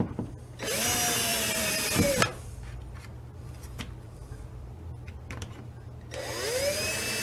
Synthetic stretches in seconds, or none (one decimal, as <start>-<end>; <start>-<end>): 1.3-5.6